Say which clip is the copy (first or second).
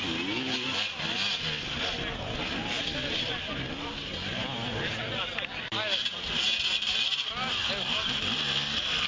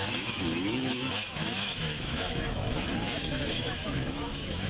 second